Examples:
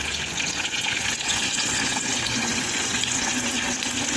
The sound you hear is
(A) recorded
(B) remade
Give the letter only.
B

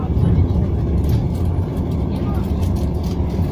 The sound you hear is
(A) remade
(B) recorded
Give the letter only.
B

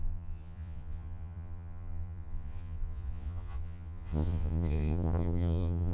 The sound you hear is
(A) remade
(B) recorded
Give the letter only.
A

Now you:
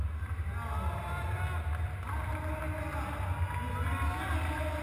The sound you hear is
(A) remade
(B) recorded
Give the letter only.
B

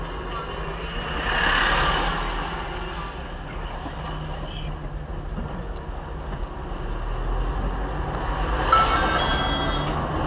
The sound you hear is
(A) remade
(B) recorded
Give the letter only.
B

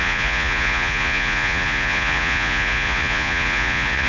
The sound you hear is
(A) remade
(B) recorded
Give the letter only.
A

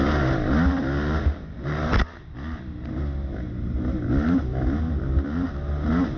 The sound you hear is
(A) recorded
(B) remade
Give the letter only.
A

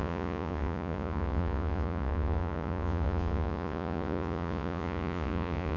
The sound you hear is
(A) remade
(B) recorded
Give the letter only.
A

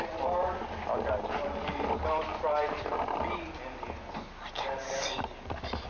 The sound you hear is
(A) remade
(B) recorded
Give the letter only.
B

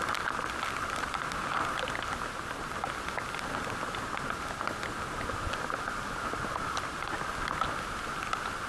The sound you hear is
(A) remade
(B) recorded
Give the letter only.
B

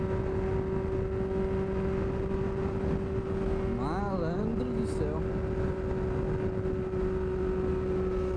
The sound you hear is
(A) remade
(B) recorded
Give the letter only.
B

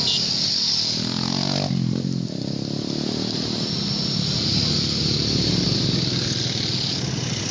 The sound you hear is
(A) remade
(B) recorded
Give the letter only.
B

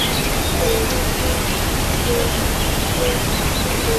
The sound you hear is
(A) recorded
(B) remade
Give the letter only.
A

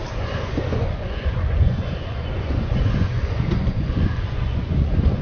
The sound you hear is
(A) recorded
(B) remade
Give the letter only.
B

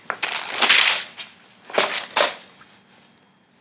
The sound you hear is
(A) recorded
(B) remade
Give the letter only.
A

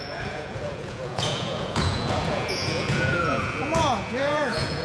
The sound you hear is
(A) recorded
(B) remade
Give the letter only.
B